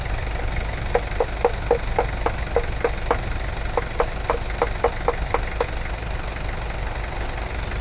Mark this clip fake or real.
real